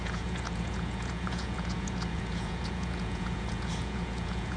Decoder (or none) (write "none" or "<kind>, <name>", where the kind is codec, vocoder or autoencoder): vocoder, Vocos